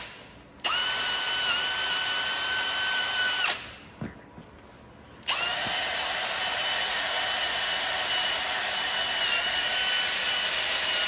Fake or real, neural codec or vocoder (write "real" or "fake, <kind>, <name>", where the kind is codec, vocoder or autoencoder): real